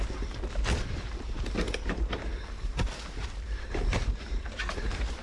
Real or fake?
fake